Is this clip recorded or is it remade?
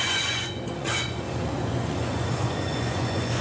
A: remade